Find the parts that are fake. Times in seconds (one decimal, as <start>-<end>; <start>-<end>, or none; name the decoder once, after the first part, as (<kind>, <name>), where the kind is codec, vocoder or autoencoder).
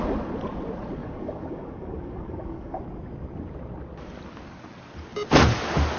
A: 1.0-2.8 (codec, DAC)